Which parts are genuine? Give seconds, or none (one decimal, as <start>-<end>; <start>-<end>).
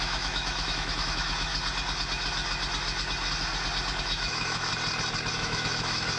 1.5-4.0; 4.7-5.3